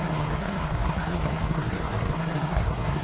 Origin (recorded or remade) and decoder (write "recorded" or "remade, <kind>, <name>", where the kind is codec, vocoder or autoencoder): remade, codec, SNAC